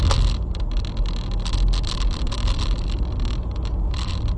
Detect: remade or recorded recorded